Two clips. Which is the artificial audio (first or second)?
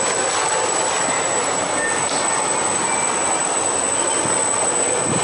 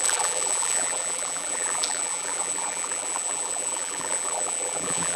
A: second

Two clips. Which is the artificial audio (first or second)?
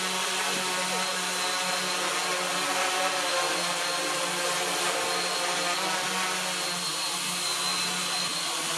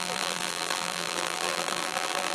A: second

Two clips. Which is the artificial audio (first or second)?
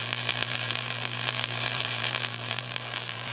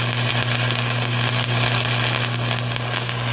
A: first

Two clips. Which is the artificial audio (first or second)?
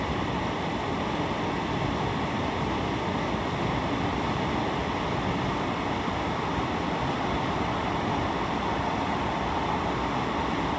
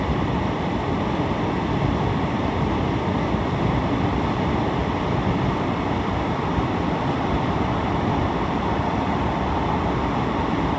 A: second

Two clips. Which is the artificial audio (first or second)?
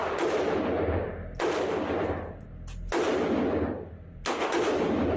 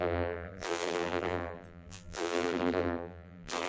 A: second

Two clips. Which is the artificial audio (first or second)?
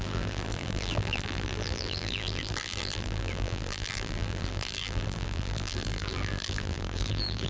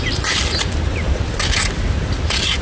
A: first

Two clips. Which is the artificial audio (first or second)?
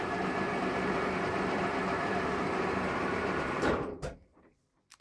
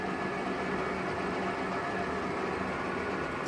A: first